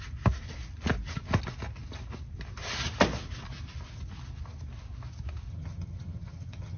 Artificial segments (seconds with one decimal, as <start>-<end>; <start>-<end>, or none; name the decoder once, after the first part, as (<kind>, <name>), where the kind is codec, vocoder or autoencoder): 5.5-6.8 (vocoder, HiFi-GAN)

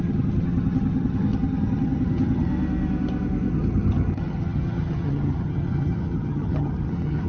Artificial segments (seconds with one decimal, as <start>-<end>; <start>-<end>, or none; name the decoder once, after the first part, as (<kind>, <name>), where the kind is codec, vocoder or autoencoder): 0.0-2.5 (vocoder, HiFi-GAN); 3.5-7.3

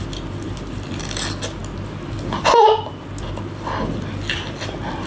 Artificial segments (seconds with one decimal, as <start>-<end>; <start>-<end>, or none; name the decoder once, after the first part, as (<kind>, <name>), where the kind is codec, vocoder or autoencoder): none

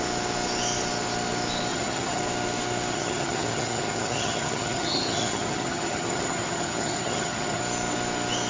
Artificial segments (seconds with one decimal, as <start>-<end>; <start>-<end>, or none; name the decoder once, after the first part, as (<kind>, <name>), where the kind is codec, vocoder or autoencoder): 1.7-2.2 (vocoder, HiFi-GAN); 2.9-7.6

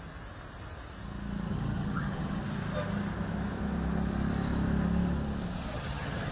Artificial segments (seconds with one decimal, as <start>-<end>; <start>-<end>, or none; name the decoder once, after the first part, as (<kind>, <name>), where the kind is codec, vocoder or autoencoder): 1.5-2.4 (vocoder, HiFi-GAN); 5.7-6.3

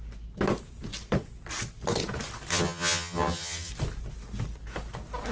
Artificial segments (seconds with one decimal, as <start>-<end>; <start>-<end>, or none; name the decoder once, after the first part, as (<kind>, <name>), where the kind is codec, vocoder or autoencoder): 2.5-3.7 (vocoder, HiFi-GAN)

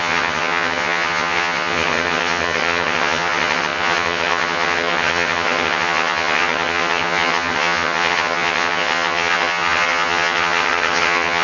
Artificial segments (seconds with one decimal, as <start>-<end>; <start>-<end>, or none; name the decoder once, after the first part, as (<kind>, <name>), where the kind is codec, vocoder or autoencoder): 0.0-11.4 (vocoder, HiFi-GAN)

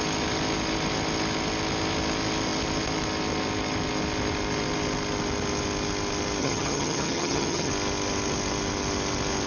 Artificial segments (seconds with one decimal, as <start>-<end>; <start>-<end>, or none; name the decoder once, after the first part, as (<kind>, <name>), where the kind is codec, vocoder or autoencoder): 6.4-7.7 (vocoder, HiFi-GAN)